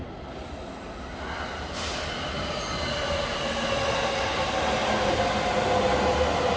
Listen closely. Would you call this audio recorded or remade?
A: recorded